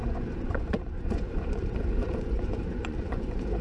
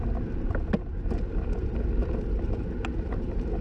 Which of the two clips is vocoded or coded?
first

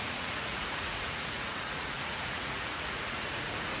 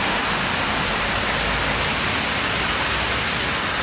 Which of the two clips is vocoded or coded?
first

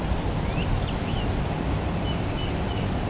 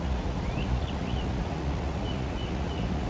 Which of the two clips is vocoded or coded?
second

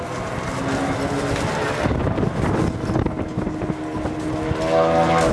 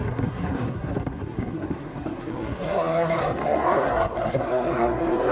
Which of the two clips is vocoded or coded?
second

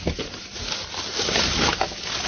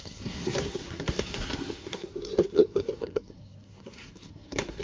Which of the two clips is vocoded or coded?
second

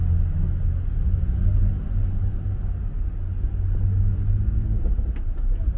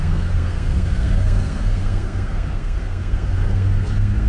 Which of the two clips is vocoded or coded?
second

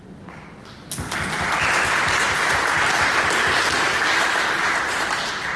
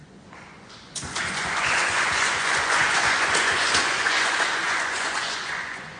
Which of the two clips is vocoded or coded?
second